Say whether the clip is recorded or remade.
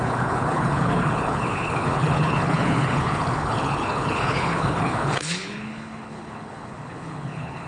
remade